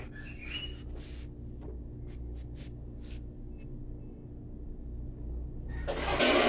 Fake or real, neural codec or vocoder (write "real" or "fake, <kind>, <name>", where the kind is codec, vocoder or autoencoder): real